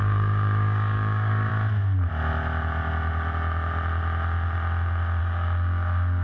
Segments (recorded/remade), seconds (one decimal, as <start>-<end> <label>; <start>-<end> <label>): 0.0-1.5 remade; 1.5-5.2 recorded; 5.2-6.2 remade